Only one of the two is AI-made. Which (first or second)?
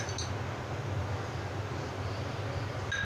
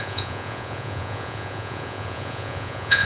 second